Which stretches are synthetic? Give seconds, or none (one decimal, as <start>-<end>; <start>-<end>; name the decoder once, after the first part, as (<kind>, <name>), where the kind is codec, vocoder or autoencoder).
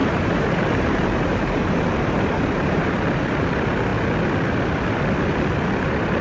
0.0-2.8 (vocoder, BigVGAN v2)